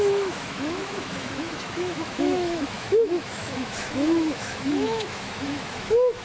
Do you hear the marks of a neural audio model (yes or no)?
yes